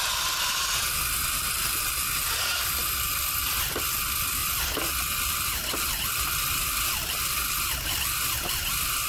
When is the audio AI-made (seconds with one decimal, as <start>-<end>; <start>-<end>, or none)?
none